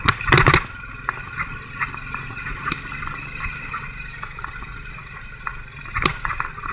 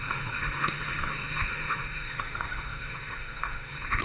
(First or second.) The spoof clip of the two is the second